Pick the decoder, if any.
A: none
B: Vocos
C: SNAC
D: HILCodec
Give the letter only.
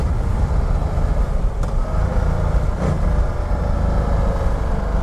A